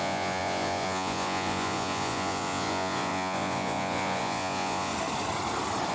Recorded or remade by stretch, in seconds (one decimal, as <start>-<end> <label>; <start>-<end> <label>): 0.0-4.9 remade; 4.9-5.9 recorded